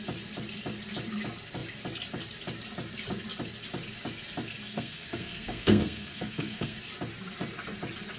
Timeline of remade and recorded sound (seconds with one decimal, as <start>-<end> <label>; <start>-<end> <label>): 0.0-4.7 recorded; 4.7-6.8 remade; 6.8-8.2 recorded